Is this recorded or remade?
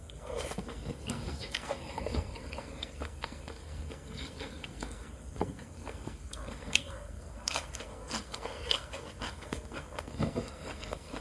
remade